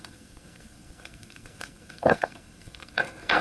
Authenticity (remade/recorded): remade